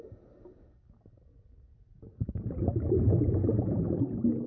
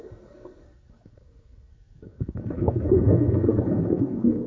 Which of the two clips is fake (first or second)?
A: second